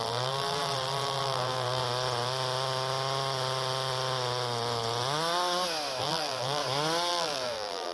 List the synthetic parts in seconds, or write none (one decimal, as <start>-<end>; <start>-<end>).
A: 0.0-1.8; 6.0-6.6; 7.1-7.9